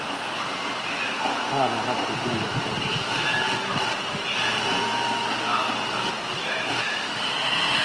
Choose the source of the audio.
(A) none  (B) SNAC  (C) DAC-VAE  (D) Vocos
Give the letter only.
A